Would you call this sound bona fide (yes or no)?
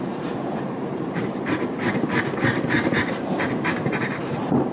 no